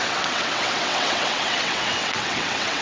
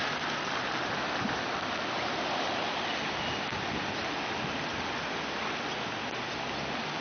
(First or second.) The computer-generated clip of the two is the first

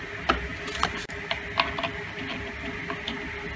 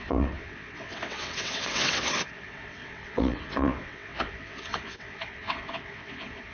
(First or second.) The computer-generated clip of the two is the second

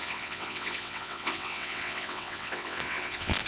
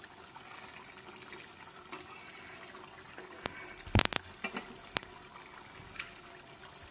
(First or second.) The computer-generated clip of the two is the first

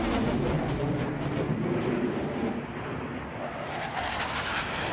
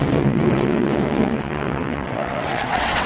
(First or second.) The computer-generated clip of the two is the second